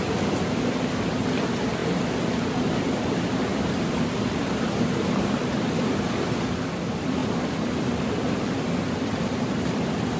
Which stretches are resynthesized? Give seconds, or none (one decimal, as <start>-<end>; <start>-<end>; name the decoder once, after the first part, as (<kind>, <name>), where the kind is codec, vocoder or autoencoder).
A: 0.0-1.8 (vocoder, BigVGAN v2); 2.3-10.2